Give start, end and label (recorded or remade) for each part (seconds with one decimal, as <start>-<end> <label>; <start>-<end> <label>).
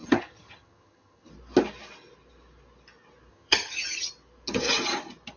0.0-1.3 remade; 1.3-3.3 recorded; 3.3-4.1 remade; 4.1-5.4 recorded